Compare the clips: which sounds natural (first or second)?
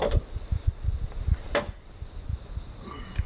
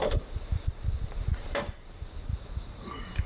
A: first